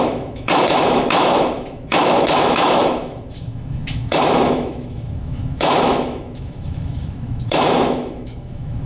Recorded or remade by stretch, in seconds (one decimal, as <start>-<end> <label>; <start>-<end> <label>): 0.0-8.9 remade